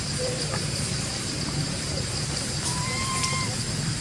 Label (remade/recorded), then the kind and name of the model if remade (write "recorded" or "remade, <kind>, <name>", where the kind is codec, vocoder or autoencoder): remade, vocoder, BigVGAN v2